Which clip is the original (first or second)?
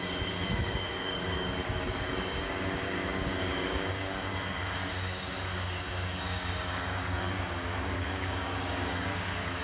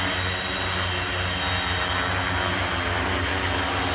second